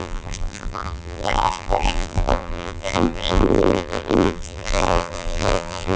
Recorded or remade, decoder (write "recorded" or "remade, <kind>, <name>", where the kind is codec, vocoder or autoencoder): remade, vocoder, BigVGAN v2